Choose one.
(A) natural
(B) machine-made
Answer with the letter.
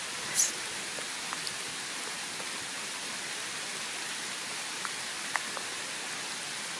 A